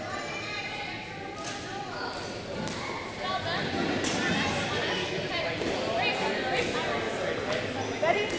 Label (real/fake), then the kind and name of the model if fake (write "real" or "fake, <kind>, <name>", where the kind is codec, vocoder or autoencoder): real